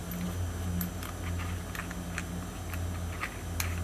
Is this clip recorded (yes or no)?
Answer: yes